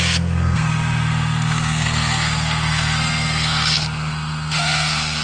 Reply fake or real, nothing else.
fake